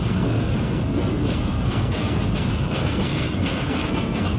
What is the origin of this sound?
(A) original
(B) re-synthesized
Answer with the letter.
B